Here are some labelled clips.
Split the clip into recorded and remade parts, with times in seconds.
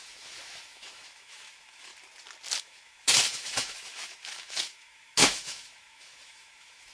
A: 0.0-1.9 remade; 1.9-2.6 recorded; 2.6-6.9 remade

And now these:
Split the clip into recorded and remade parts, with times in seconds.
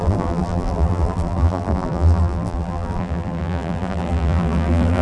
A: 0.0-5.0 remade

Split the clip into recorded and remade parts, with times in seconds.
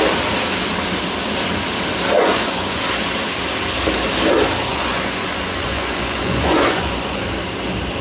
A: 0.0-2.2 recorded; 2.2-2.8 remade; 2.8-4.7 recorded; 4.7-7.2 remade; 7.2-8.0 recorded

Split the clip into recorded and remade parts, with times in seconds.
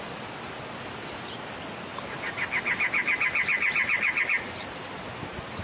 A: 0.0-5.6 recorded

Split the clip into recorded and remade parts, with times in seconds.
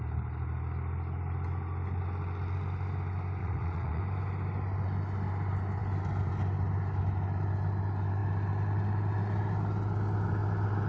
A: 0.0-3.4 recorded; 3.4-4.0 remade; 4.0-10.9 recorded